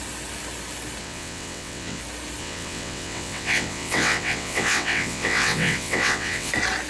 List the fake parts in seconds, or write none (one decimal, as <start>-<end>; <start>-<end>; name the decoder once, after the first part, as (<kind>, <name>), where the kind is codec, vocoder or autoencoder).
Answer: 1.0-2.0 (vocoder, WaveNeXt); 2.4-6.5